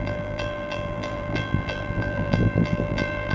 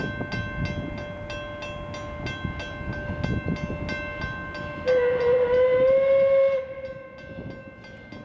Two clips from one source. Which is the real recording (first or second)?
second